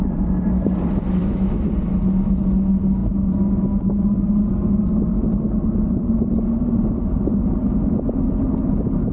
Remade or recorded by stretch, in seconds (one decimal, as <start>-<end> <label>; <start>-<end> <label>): 0.0-1.2 recorded; 1.2-1.7 remade; 1.7-9.1 recorded